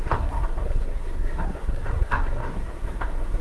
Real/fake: fake